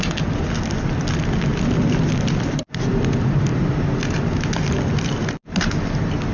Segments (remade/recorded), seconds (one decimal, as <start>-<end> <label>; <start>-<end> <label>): 0.0-6.3 recorded